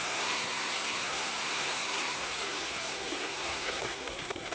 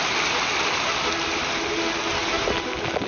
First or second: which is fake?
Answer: first